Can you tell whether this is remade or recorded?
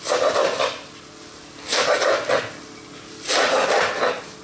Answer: recorded